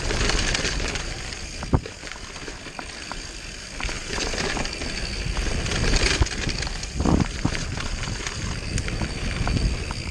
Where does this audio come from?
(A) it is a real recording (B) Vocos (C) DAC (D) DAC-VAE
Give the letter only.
A